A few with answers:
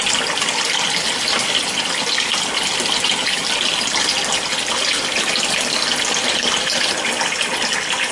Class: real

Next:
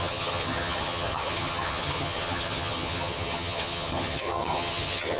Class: fake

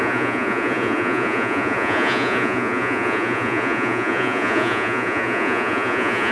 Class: fake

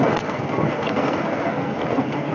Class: fake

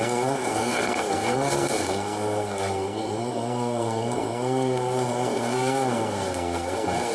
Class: fake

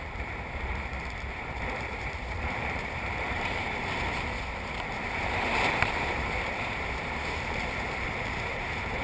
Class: fake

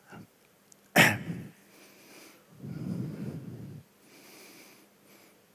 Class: real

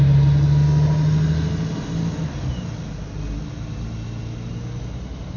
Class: real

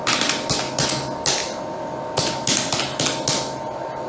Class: real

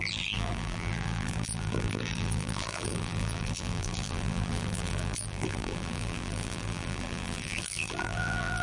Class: fake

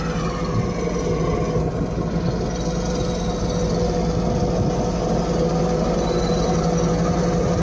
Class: real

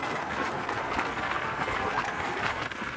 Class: fake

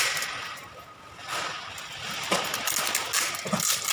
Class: real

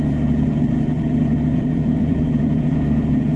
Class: fake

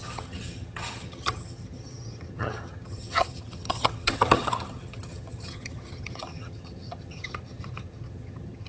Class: fake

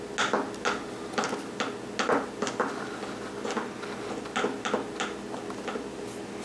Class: real